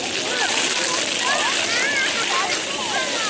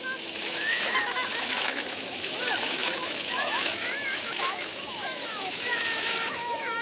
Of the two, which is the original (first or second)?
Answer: first